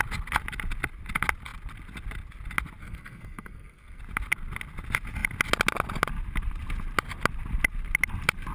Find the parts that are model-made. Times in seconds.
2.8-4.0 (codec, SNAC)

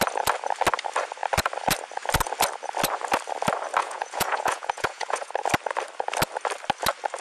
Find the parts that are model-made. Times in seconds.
3.8-5.3 (vocoder, Vocos)

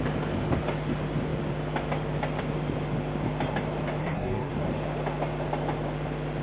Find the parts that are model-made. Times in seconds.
4.0-4.5 (codec, SNAC)

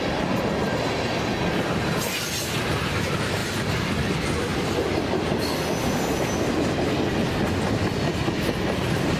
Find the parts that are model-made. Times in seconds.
none

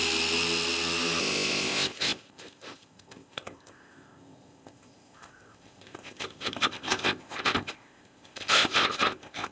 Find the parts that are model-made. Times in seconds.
1.2-9.5 (codec, ZipCodec)